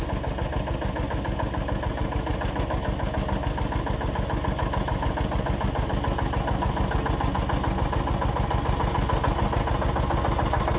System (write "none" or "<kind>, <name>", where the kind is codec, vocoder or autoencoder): none